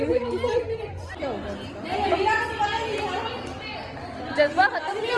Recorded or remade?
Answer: recorded